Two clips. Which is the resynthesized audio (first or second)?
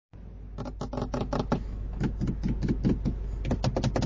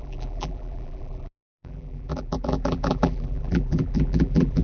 second